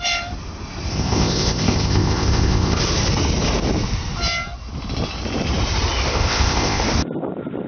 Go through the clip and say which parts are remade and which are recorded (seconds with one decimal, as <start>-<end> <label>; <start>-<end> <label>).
0.0-0.9 recorded; 0.9-2.8 remade; 2.8-6.1 recorded; 6.1-6.8 remade; 6.8-7.7 recorded